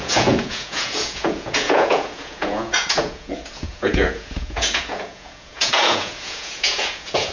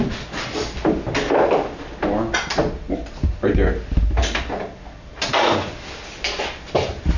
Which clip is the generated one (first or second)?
first